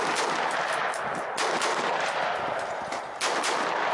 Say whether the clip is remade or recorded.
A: recorded